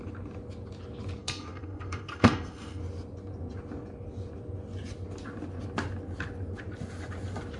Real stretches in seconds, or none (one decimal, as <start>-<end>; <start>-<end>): 0.0-1.2; 2.8-7.6